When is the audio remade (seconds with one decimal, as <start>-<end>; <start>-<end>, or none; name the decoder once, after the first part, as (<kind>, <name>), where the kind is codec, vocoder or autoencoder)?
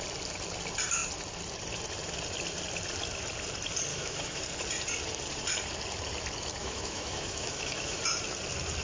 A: 3.9-4.4 (autoencoder, DAC-VAE); 6.6-8.0